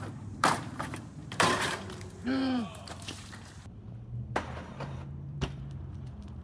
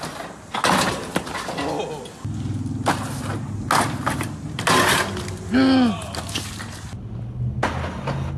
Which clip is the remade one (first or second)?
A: first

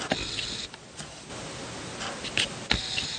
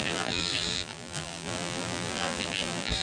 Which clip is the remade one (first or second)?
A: second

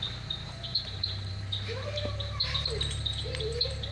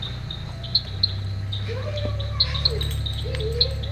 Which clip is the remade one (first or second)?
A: first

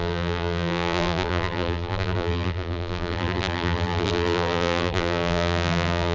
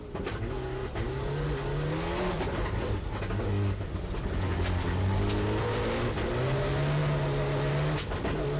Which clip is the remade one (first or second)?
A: first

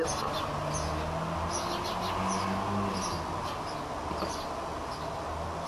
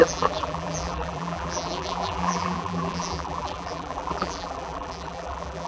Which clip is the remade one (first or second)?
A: second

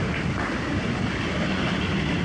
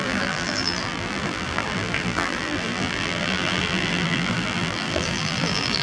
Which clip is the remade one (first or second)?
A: second